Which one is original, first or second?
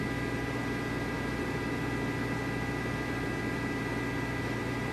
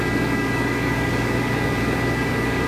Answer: first